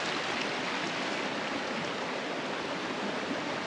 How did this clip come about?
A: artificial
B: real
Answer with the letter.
B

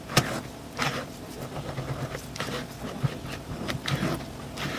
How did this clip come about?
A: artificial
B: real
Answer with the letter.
A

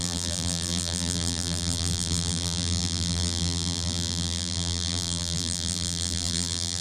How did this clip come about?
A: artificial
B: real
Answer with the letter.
A